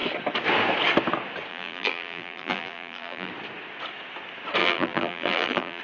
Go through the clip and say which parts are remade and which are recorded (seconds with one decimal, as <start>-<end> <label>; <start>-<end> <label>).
0.0-1.5 recorded; 1.5-3.3 remade; 3.3-4.6 recorded; 4.6-5.8 remade